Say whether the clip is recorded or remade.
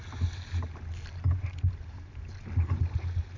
recorded